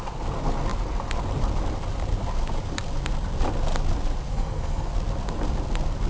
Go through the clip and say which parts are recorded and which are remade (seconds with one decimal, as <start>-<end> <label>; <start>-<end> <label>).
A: 0.0-4.3 recorded; 4.3-4.9 remade; 4.9-6.1 recorded